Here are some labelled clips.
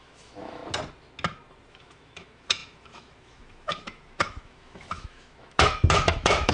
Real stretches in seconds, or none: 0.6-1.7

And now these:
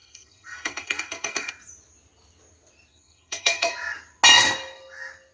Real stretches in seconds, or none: 1.5-2.9; 3.7-5.3

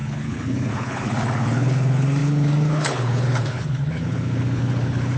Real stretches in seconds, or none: none

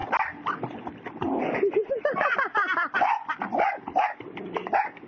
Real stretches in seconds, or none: 0.0-5.1

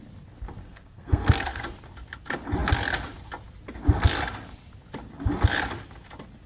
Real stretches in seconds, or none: 0.0-0.6; 1.6-6.5